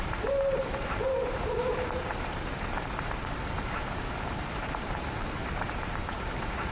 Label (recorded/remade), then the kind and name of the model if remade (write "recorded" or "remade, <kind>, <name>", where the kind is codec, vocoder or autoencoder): remade, vocoder, BigVGAN v2